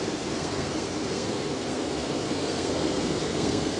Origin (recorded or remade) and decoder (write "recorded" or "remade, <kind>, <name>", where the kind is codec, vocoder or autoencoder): remade, codec, SNAC